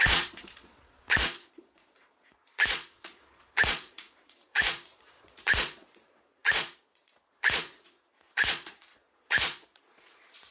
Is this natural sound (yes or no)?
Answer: no